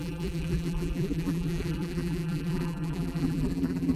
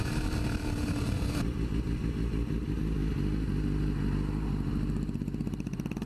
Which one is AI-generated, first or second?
first